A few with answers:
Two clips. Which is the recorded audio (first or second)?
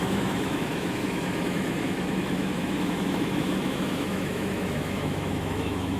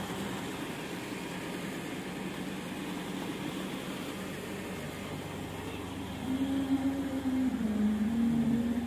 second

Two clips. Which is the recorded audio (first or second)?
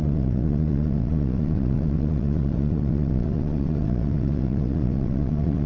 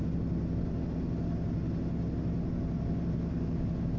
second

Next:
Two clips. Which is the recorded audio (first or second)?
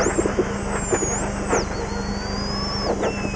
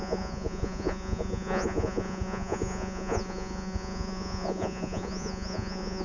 first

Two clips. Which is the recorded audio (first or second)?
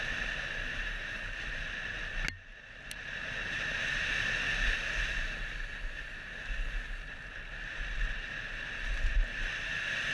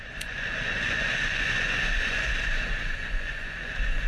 first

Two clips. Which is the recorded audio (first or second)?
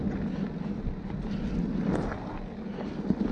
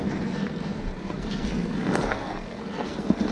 first